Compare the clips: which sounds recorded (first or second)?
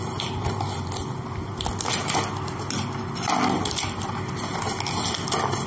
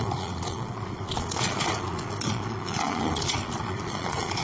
first